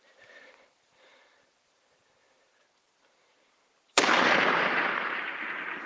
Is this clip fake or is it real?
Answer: fake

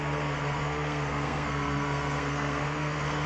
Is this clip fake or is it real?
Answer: fake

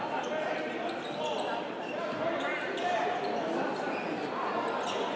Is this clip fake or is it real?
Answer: real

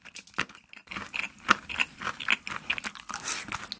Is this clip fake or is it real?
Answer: real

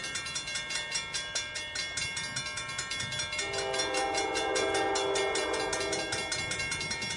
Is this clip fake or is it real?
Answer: real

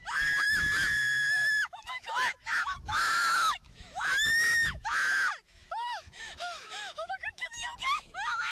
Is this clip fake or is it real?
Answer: fake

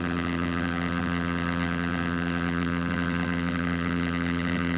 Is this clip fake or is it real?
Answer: fake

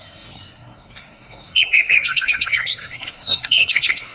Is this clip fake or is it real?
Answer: fake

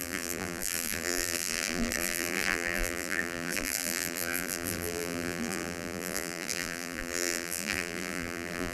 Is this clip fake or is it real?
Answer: fake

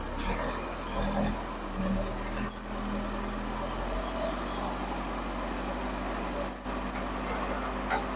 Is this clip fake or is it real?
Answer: real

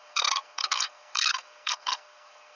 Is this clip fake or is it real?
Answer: fake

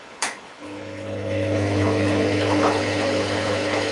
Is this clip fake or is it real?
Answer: fake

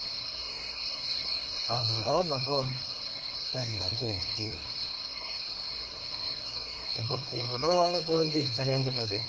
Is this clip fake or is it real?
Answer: fake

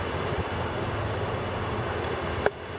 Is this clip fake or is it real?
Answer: real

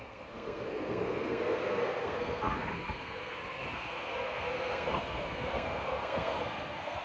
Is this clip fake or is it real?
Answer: fake